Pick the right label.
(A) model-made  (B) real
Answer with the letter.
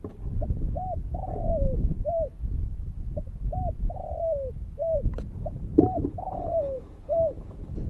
A